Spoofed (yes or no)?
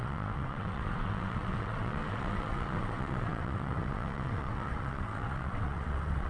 yes